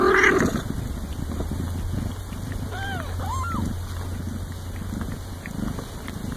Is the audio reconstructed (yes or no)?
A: no